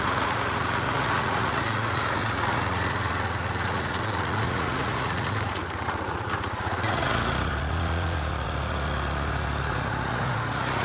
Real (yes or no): no